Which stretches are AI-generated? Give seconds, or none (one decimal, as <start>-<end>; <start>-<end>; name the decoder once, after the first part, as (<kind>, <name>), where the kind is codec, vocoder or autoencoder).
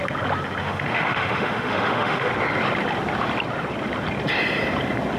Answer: 0.6-2.3 (autoencoder, DAC-VAE)